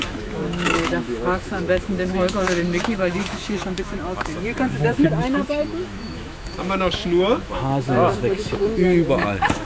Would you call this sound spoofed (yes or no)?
yes